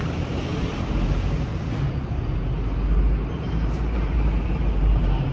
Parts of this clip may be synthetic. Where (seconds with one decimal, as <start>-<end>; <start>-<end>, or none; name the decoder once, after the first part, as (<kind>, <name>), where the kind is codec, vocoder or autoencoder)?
0.0-1.5 (vocoder, BigVGAN v2); 3.3-5.3